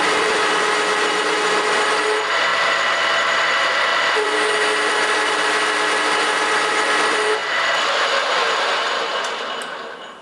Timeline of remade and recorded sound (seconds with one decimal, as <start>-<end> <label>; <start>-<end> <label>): 0.0-2.5 recorded; 2.5-3.5 remade; 3.5-3.9 recorded; 3.9-6.1 remade; 6.1-10.2 recorded